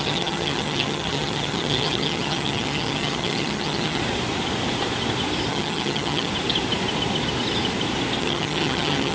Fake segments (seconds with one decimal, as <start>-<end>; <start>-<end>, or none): 0.0-4.0; 5.5-6.3; 8.2-9.1